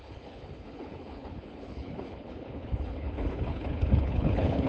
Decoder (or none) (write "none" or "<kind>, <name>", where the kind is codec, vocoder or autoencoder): codec, HILCodec